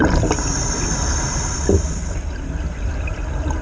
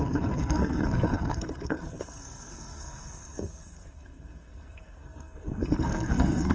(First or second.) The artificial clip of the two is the second